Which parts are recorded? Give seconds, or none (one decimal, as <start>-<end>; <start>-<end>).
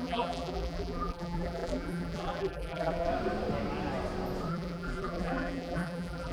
3.1-4.5